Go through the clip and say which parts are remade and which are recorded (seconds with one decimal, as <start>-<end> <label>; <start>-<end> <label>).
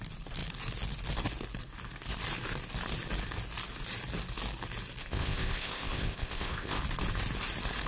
0.0-5.0 recorded; 5.0-6.8 remade; 6.8-7.9 recorded